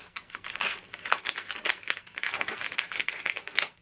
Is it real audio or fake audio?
fake